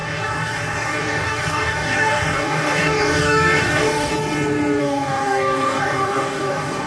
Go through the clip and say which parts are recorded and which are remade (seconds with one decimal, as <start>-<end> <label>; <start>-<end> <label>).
0.0-4.1 remade; 4.1-4.8 recorded; 4.8-6.9 remade